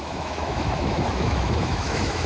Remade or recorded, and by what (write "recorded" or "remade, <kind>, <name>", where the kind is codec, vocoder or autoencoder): remade, autoencoder, DAC-VAE